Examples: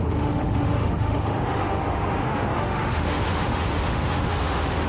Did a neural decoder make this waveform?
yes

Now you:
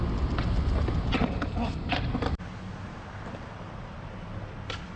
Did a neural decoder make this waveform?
no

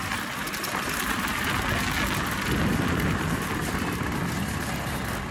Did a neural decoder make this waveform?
no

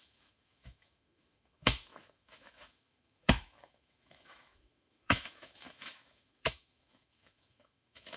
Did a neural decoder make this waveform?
yes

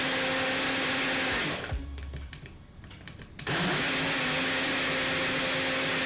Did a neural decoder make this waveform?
no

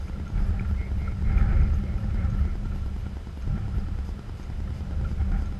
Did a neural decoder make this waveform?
no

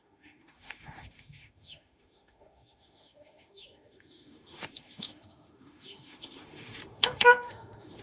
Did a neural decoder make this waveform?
yes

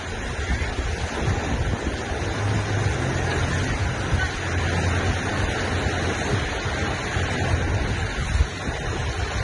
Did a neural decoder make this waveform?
no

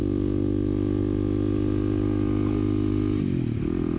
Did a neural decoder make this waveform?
no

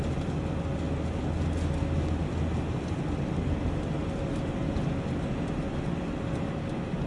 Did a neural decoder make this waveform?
no